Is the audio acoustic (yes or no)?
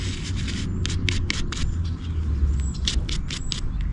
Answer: yes